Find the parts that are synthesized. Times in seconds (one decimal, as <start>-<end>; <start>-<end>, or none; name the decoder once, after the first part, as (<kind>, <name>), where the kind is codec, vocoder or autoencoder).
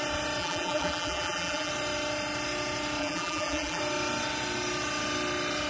0.4-1.7 (vocoder, BigVGAN v2); 3.0-3.8